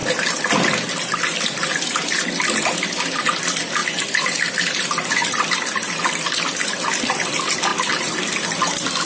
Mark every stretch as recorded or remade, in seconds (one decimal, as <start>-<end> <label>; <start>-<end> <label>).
0.0-9.1 recorded